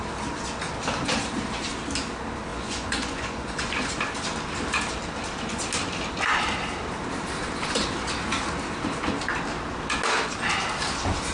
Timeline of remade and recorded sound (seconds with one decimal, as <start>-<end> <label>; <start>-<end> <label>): 0.0-2.5 recorded; 2.5-3.9 remade; 3.9-11.3 recorded